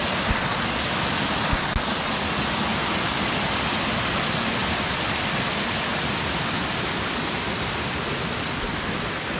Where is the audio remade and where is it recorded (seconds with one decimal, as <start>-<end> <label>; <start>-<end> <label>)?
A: 0.0-9.4 recorded